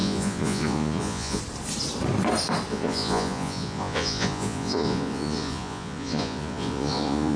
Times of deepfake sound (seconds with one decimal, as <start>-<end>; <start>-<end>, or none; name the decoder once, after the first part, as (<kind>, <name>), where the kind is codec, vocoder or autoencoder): 0.0-1.4 (vocoder, Vocos); 2.7-7.4